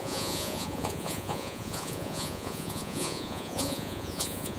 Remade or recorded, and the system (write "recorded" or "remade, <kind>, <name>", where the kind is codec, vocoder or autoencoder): remade, vocoder, Vocos